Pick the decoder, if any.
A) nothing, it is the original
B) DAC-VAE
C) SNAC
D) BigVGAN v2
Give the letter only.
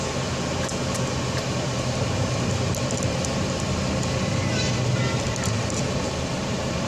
A